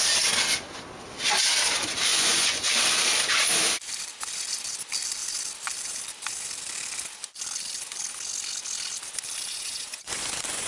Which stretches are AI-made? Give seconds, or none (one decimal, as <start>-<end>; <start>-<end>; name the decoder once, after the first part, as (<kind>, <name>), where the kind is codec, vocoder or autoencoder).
2.1-2.7 (vocoder, Vocos); 9.5-10.7